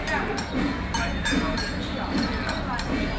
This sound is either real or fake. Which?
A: real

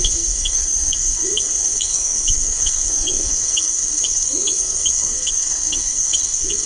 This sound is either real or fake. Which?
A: fake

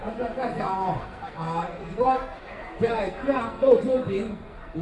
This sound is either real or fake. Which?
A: fake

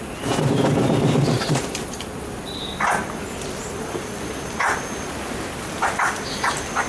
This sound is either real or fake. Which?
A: real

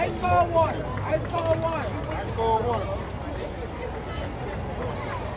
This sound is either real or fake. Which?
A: real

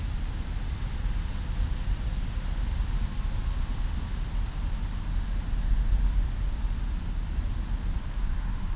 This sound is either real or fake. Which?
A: real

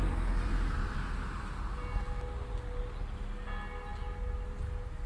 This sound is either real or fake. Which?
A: real